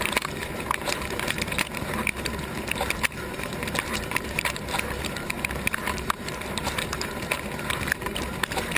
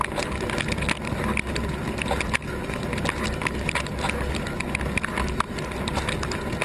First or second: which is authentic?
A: second